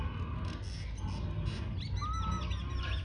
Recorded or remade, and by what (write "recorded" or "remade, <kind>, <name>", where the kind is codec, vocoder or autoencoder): recorded